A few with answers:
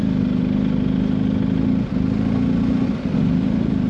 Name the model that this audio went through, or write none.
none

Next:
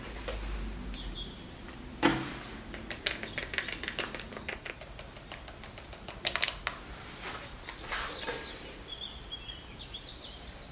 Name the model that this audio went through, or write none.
none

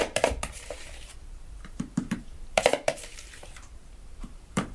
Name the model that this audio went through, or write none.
vocoder, BigVGAN v2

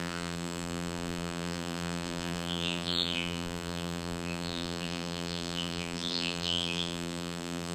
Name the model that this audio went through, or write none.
vocoder, BigVGAN v2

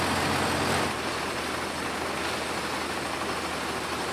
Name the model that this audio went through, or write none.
none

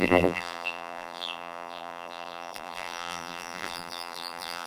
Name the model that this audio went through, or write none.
vocoder, BigVGAN v2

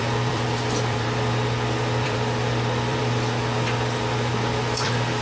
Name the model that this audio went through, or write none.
vocoder, BigVGAN v2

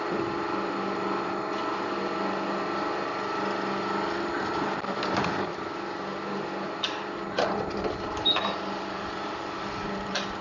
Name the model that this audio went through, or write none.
vocoder, BigVGAN v2